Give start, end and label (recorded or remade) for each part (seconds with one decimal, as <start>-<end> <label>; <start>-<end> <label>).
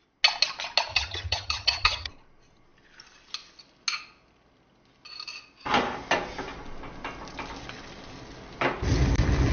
0.0-0.9 recorded; 0.9-2.1 remade; 2.1-9.5 recorded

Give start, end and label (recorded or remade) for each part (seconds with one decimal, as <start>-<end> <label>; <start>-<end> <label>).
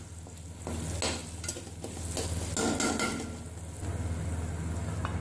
0.0-5.2 recorded